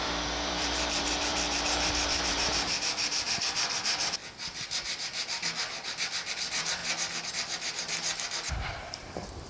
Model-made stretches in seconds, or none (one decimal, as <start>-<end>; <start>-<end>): 0.0-4.2; 6.3-6.8; 7.3-9.5